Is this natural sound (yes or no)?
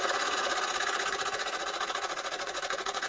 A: no